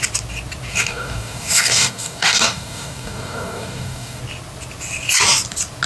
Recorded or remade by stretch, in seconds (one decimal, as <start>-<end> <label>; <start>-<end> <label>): 0.0-0.7 recorded; 0.7-4.2 remade; 4.2-5.9 recorded